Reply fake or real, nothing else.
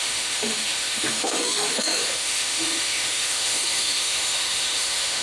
fake